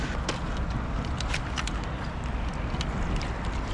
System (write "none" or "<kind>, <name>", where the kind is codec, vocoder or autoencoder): none